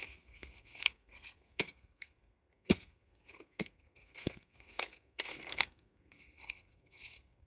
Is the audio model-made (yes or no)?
yes